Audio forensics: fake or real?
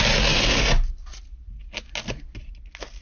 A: real